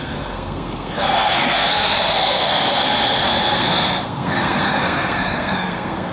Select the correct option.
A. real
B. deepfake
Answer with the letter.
B